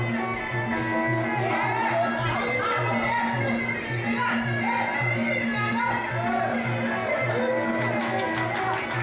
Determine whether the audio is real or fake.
real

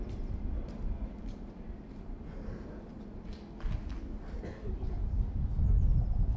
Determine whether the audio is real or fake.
real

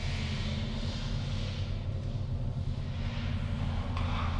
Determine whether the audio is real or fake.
real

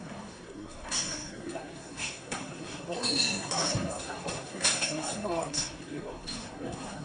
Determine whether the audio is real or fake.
fake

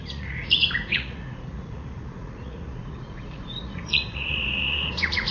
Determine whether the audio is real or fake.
fake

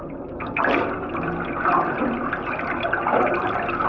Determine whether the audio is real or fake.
fake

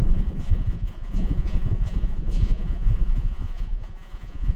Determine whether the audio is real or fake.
fake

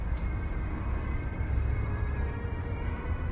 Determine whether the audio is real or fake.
fake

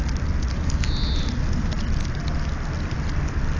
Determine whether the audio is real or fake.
real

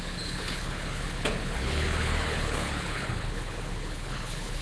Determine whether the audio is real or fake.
fake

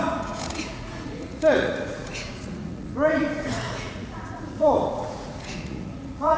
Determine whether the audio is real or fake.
fake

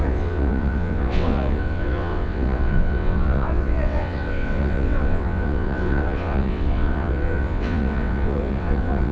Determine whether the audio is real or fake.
fake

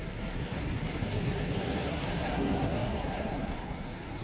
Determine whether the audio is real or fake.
fake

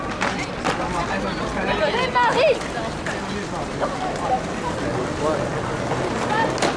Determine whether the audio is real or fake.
real